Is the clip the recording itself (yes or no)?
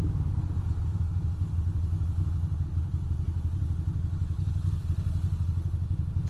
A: yes